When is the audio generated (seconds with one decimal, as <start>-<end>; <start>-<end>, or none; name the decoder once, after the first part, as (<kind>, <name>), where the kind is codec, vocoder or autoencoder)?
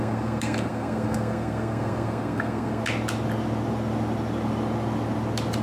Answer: 0.0-2.8 (codec, SNAC)